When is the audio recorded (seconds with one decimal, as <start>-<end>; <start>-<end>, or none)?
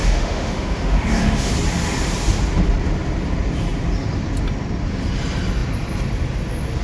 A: 1.5-6.8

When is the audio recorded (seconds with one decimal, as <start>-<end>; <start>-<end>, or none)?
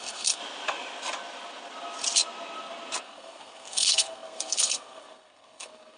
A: 0.4-3.0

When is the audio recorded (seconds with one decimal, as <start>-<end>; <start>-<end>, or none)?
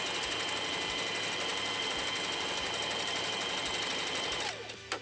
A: 0.0-5.0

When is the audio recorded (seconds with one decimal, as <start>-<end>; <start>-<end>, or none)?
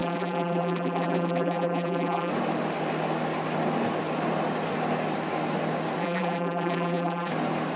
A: 2.3-6.0; 7.3-7.8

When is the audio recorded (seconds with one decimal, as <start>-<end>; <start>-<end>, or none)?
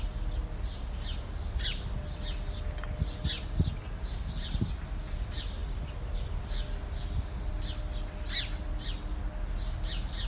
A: 0.0-10.3